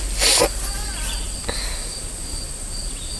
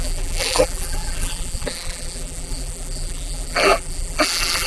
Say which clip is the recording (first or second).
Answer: first